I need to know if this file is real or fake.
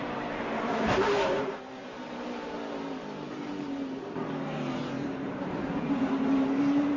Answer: fake